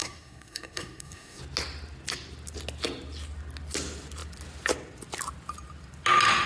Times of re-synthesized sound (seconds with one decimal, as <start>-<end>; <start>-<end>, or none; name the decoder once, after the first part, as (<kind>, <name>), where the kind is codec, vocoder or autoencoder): 0.0-1.4 (codec, SNAC)